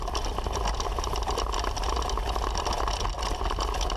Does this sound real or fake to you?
real